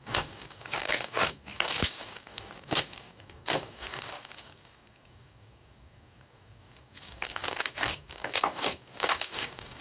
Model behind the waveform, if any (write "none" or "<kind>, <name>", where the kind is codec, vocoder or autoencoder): codec, DAC